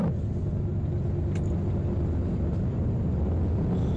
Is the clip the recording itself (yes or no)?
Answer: yes